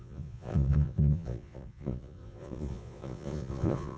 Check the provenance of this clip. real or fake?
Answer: fake